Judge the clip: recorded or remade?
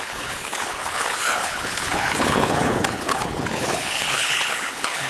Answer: remade